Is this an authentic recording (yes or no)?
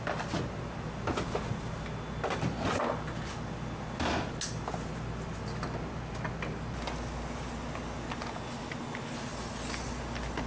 yes